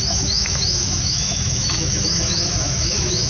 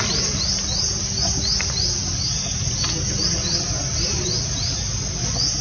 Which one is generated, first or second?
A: first